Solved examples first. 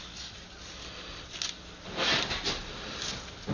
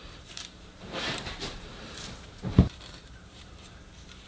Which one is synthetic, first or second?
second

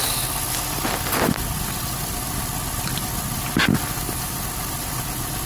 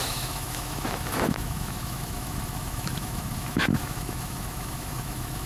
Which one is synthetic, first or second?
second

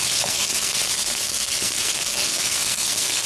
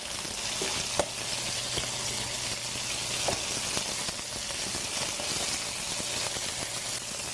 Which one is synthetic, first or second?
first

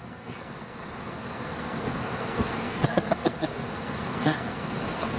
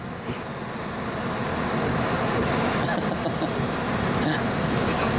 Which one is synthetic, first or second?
first